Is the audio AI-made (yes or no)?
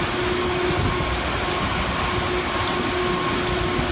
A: no